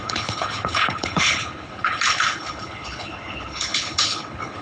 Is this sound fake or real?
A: fake